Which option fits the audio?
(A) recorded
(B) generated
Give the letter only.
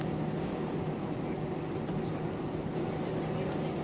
A